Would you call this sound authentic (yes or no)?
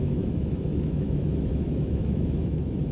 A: no